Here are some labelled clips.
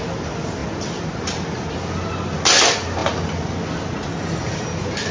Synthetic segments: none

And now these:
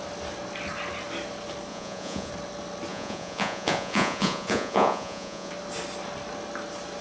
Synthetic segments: 1.7-2.3; 2.9-5.5

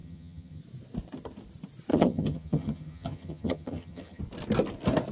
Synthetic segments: 0.0-0.6; 1.9-4.2

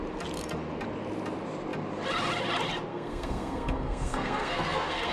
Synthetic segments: 2.9-5.1